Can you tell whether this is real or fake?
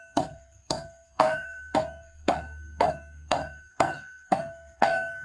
fake